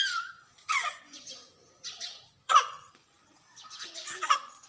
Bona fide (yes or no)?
no